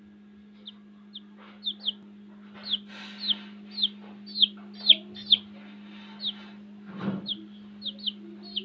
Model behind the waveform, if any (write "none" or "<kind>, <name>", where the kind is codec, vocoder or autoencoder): none